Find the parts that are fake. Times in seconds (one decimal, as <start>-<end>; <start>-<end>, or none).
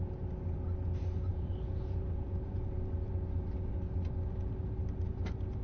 1.3-2.6